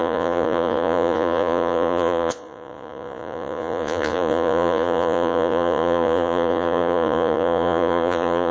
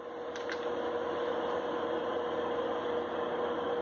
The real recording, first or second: second